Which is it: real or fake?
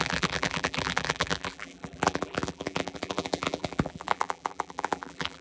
fake